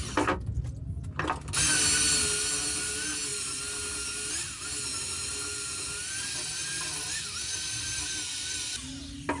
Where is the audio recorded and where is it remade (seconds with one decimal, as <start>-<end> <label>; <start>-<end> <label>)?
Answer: 0.0-9.4 recorded